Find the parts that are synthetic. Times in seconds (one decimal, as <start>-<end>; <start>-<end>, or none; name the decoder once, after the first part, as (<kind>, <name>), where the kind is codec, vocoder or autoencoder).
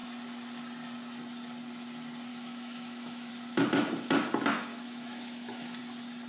2.3-3.3 (autoencoder, DAC-VAE); 4.7-5.8